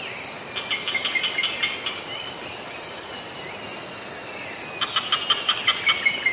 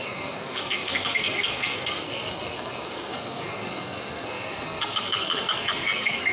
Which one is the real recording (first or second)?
first